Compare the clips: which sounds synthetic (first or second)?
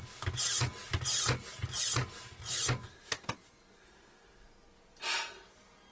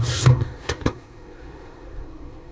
second